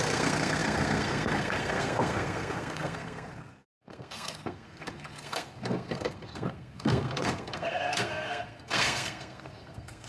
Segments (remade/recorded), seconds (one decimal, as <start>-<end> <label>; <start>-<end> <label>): 0.0-10.1 remade